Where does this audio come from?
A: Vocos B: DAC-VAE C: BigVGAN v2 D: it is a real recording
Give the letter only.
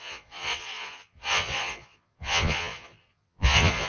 A